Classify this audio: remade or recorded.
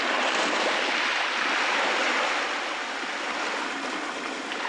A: recorded